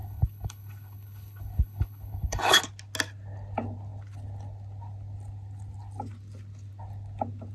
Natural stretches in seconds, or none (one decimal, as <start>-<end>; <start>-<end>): 2.6-7.5